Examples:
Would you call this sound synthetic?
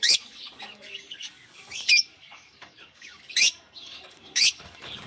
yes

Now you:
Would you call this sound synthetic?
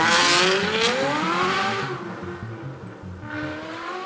no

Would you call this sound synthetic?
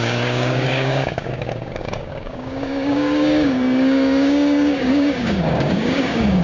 yes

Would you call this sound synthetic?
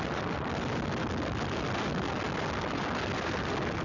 no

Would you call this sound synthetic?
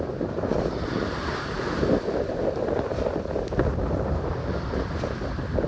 no